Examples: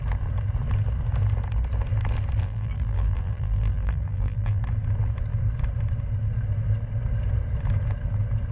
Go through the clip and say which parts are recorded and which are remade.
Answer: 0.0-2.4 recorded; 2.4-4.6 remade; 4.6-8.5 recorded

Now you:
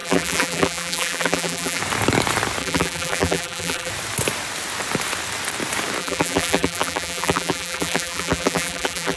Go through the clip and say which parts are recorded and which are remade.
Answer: 0.0-1.8 remade; 1.8-2.6 recorded; 2.6-3.9 remade; 3.9-6.0 recorded; 6.0-9.2 remade

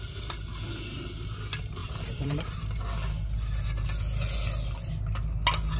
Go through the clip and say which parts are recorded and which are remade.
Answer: 0.0-1.8 recorded; 1.8-2.6 remade; 2.6-5.8 recorded